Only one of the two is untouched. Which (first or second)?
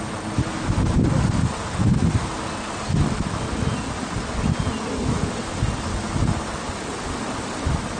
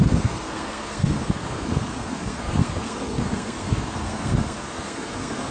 first